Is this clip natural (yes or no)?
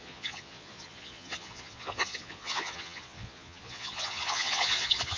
no